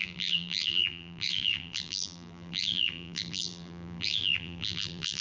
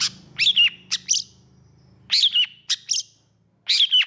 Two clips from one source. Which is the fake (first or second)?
first